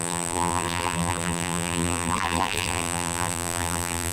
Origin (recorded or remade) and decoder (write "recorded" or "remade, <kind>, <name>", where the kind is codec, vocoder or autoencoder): remade, vocoder, BigVGAN v2